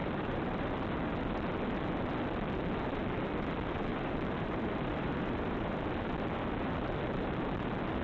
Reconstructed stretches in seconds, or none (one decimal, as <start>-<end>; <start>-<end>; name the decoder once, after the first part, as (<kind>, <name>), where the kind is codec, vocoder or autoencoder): 0.0-0.7 (vocoder, BigVGAN v2); 3.9-5.8